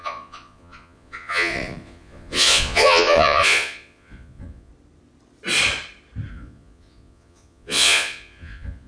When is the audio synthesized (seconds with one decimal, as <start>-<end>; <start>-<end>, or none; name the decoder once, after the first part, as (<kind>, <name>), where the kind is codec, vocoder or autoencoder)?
0.0-4.7 (vocoder, Vocos); 6.3-8.9